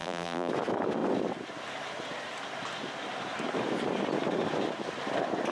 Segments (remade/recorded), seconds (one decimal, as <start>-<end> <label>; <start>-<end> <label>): 0.0-0.5 remade; 0.5-5.5 recorded